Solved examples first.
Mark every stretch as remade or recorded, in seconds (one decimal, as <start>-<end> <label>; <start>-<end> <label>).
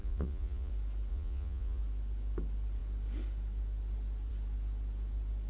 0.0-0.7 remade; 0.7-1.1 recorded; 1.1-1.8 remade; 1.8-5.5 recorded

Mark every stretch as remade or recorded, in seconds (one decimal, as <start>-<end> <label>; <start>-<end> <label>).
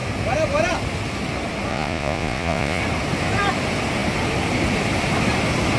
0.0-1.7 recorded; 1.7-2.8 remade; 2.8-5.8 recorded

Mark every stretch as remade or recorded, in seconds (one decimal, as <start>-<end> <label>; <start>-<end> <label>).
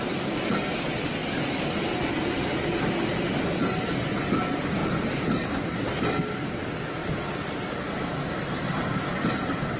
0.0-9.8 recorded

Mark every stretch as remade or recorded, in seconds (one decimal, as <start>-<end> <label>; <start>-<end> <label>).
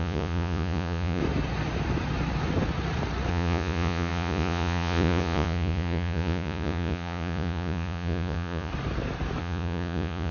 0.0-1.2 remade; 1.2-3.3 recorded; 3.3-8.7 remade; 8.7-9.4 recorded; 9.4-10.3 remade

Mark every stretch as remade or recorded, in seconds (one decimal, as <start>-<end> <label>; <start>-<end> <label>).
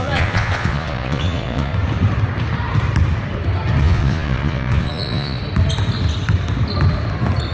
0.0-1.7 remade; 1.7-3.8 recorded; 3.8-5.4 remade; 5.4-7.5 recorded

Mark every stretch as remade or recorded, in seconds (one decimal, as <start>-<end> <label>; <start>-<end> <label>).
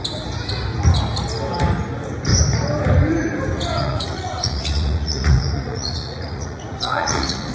0.0-3.8 recorded; 3.8-7.5 remade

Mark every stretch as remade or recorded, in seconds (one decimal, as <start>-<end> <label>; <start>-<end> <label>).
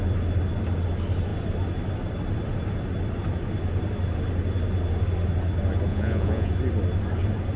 0.0-5.9 recorded; 5.9-6.5 remade; 6.5-7.6 recorded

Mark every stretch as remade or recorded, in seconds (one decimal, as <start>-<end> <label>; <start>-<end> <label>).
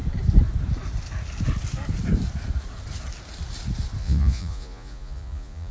0.0-4.0 recorded; 4.0-5.7 remade